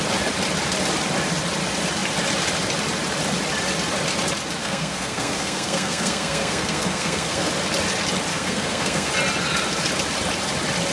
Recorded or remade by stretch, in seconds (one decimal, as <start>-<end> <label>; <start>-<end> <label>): 0.0-4.6 recorded; 4.6-7.5 remade; 7.5-8.3 recorded; 8.3-9.1 remade; 9.1-10.9 recorded